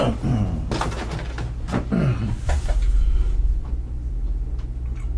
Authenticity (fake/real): real